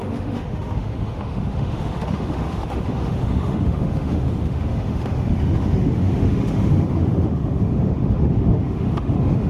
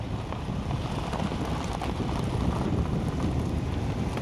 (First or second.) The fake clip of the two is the first